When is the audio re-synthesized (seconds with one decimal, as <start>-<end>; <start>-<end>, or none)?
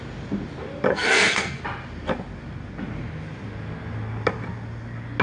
0.9-1.6